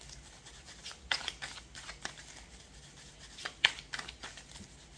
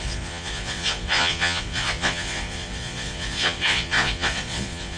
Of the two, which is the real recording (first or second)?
first